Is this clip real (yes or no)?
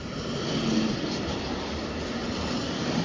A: yes